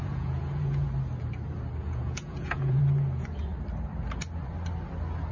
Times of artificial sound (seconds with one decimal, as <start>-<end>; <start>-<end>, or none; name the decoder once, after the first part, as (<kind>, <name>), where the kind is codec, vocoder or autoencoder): 0.0-0.9 (vocoder, Vocos); 1.8-2.8